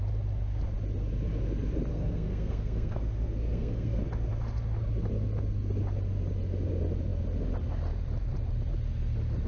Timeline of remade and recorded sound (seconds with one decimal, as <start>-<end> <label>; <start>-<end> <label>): 0.0-1.9 recorded; 1.9-4.0 remade; 4.0-9.5 recorded